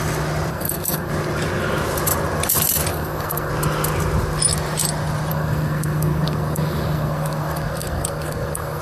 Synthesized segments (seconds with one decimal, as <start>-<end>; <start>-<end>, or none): 0.5-1.1; 2.9-3.5; 5.3-8.8